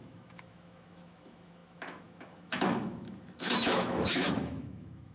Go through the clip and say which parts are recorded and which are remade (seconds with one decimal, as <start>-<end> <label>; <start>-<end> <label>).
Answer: 0.0-5.1 remade